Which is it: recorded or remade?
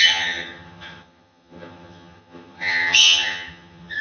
remade